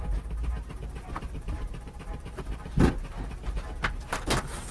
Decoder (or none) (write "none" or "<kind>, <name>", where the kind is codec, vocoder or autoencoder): vocoder, BigVGAN v2